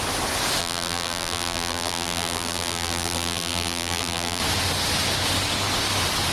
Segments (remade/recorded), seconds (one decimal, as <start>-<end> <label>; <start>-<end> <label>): 0.0-0.6 recorded; 0.6-4.4 remade; 4.4-6.3 recorded